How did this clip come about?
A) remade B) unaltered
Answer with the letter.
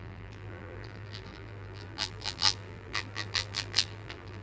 A